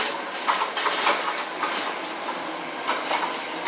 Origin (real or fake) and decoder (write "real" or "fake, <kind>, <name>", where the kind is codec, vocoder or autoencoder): real